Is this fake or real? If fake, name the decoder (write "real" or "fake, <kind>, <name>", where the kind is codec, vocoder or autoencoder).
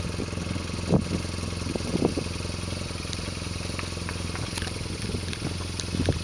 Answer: real